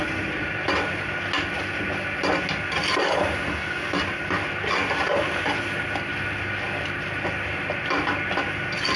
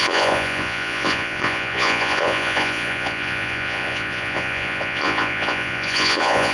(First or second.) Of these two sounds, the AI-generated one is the second